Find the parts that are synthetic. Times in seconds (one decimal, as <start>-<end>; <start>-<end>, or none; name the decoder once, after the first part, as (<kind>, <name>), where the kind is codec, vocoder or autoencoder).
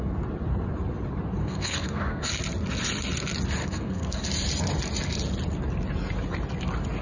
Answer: 1.4-2.3 (codec, SNAC); 3.6-4.2